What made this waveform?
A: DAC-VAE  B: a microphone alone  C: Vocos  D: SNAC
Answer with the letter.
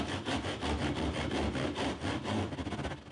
B